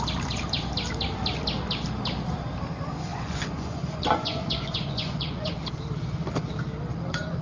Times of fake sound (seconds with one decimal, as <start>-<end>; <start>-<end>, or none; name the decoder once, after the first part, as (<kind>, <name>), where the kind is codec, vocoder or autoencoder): 3.1-5.5 (vocoder, Vocos)